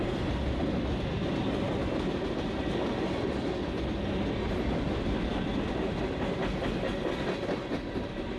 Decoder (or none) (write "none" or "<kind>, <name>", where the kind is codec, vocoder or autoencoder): none